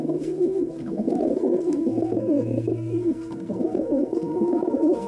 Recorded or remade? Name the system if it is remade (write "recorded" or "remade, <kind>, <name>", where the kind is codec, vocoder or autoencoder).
remade, codec, SNAC